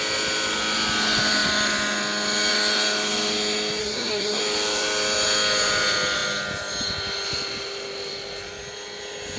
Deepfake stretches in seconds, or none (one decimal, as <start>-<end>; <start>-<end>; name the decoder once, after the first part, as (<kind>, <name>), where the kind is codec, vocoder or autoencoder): 3.8-4.4 (codec, SNAC)